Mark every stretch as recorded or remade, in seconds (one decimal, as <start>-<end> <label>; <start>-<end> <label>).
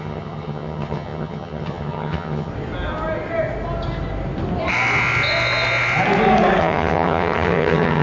0.0-2.5 remade; 2.5-6.6 recorded; 6.6-8.0 remade